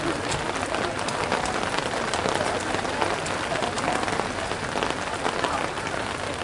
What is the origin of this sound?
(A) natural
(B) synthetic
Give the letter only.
A